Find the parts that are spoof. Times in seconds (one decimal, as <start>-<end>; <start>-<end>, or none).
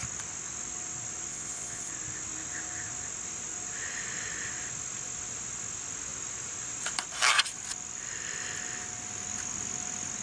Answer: 1.3-1.9